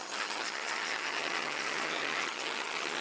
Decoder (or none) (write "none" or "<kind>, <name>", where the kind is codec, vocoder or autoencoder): vocoder, HiFi-GAN